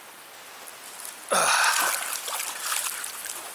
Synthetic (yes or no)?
no